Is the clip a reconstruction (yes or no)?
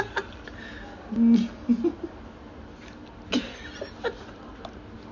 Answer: no